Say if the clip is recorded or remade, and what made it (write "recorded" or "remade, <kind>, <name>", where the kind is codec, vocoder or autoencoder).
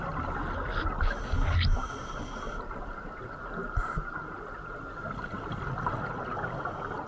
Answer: recorded